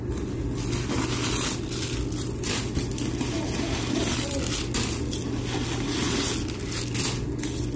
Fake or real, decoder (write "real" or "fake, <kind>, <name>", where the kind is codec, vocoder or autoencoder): real